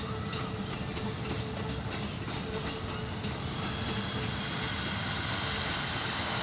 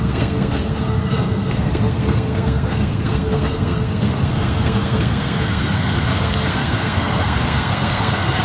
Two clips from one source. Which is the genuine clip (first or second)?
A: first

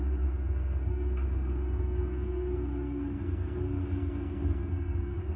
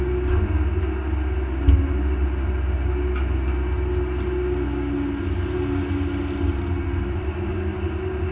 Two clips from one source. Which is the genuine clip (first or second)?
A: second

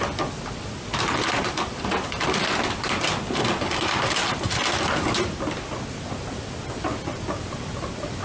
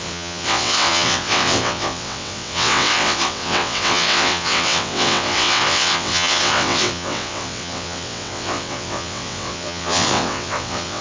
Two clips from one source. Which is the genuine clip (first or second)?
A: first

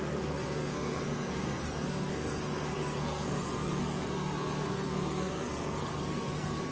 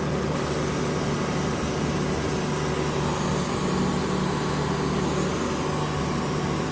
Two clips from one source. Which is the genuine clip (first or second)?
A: second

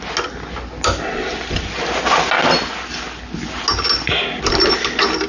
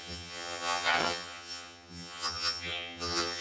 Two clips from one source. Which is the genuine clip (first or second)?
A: first